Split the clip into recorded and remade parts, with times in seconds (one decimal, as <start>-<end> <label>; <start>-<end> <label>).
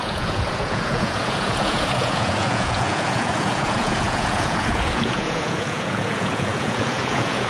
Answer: 0.0-7.5 remade